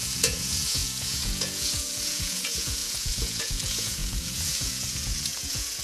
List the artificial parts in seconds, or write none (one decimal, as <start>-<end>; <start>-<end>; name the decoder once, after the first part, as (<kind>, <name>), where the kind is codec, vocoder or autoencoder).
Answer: 0.0-5.8 (vocoder, Vocos)